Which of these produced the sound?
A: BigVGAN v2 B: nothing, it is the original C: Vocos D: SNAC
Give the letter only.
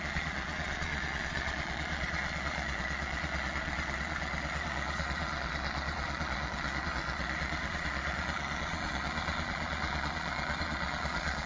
C